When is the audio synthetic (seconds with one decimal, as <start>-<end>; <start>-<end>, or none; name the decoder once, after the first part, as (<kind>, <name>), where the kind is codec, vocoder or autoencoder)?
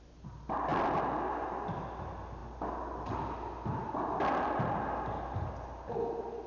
none